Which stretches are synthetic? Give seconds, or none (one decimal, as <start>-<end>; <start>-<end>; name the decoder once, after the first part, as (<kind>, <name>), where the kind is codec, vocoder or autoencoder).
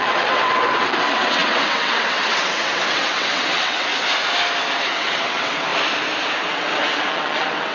0.0-3.9 (vocoder, WaveNeXt); 4.8-5.7; 6.5-7.7